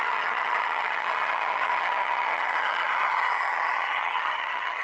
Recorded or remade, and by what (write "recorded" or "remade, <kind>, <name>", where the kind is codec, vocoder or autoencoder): remade, vocoder, HiFi-GAN